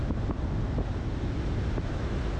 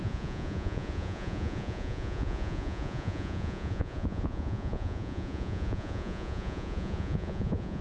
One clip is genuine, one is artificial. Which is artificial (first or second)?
second